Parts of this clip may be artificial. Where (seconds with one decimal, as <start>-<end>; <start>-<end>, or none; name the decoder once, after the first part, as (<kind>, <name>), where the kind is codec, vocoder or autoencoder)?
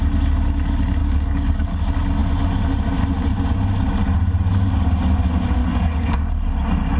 1.0-1.8 (codec, DAC); 5.6-6.3